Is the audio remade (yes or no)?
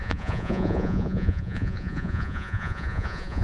yes